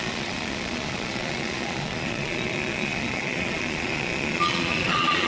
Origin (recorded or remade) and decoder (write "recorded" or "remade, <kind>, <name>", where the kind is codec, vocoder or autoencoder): remade, vocoder, Vocos